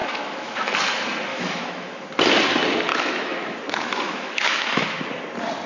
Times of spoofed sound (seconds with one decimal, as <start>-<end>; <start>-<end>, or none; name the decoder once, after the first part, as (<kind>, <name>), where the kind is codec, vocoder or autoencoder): 0.0-0.7 (autoencoder, DAC-VAE); 1.3-2.1; 2.9-5.0